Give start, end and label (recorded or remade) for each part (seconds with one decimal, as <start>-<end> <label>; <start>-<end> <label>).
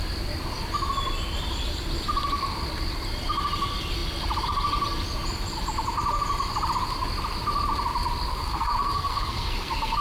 0.0-8.3 recorded; 8.3-10.0 remade